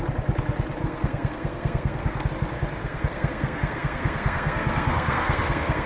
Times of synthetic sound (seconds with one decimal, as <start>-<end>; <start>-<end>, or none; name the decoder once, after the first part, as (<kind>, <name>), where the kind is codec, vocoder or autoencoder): 0.8-2.3 (codec, SNAC); 2.8-5.9